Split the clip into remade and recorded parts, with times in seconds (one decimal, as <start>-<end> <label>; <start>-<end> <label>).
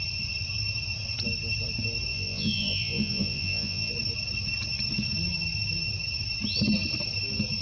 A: 0.0-2.1 recorded; 2.1-3.9 remade; 3.9-7.6 recorded